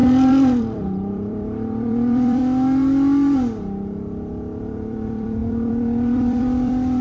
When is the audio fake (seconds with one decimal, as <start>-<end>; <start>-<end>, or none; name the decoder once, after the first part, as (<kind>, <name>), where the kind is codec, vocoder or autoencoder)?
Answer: 0.0-2.4 (vocoder, BigVGAN v2); 4.6-7.0